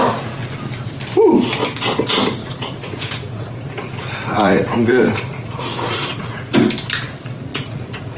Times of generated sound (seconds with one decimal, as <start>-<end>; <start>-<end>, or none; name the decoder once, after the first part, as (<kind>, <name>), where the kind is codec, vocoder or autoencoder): 2.4-6.5 (vocoder, Vocos); 7.5-8.2